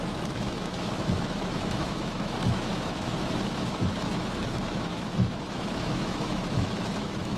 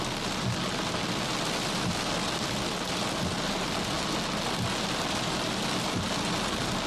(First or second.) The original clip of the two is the second